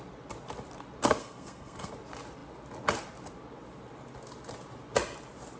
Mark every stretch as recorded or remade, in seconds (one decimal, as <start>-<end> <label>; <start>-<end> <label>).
0.0-1.2 recorded; 1.2-1.9 remade; 1.9-5.6 recorded